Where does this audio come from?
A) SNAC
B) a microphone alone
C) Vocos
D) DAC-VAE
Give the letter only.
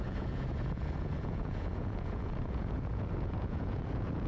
C